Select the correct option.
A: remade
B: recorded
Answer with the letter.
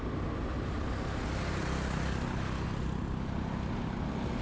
B